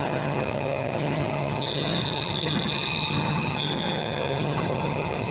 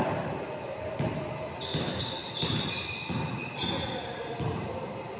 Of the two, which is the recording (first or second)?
second